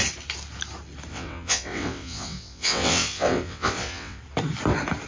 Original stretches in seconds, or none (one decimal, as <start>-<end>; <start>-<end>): 0.0-1.1; 4.2-5.1